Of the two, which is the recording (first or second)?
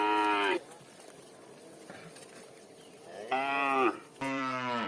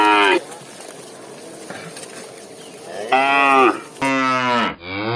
second